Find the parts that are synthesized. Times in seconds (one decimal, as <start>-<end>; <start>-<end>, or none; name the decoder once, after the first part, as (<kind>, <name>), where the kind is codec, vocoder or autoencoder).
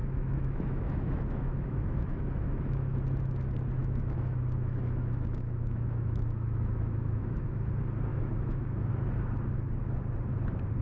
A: 0.0-3.0 (autoencoder, DAC-VAE); 3.8-7.7; 8.1-8.9